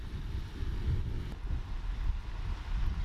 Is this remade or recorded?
recorded